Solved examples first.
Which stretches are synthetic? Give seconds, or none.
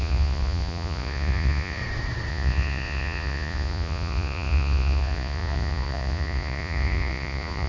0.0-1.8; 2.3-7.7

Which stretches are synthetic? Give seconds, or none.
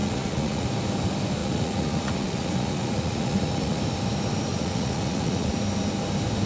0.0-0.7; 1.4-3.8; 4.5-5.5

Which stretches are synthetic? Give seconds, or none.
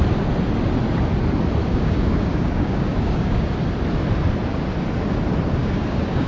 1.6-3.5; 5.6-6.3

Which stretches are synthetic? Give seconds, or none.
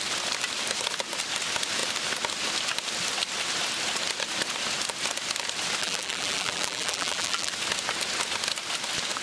5.8-7.5